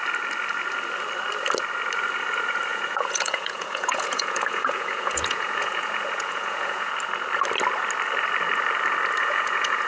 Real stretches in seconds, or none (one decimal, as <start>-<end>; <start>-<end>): 0.0-2.7; 6.9-9.2